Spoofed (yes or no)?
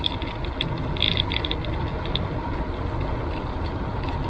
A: no